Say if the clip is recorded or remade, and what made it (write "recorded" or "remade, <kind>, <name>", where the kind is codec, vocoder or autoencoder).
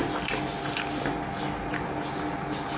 recorded